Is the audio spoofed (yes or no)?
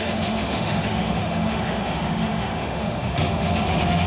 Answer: yes